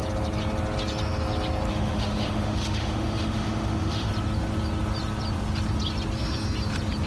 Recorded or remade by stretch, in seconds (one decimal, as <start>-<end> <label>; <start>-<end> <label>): 0.0-1.7 recorded; 1.7-4.1 remade; 4.1-7.1 recorded